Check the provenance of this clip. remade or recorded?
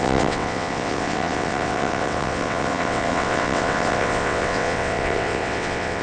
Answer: remade